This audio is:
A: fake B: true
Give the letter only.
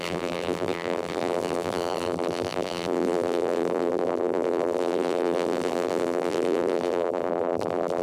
A